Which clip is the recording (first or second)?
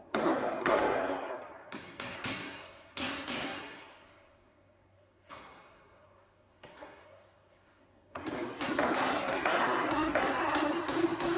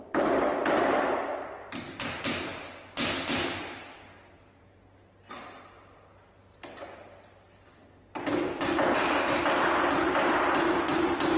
second